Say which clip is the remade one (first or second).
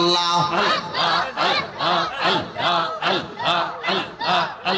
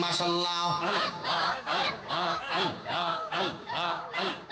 second